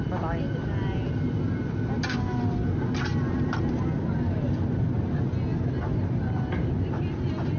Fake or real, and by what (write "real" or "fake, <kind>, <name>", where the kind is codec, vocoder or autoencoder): real